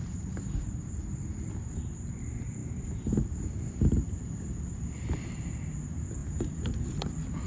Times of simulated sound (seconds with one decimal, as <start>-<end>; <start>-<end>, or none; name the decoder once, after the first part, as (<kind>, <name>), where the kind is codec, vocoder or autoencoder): 2.6-3.7 (vocoder, BigVGAN v2); 6.2-7.5